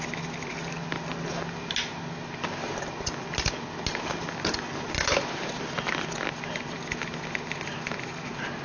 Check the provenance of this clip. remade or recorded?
recorded